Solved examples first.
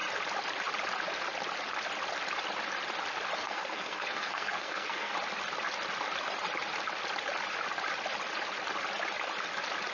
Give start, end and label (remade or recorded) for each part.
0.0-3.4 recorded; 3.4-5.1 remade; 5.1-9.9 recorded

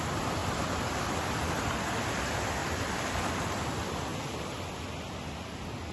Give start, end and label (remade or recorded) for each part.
0.0-0.4 recorded; 0.4-2.2 remade; 2.2-2.6 recorded; 2.6-3.6 remade; 3.6-5.9 recorded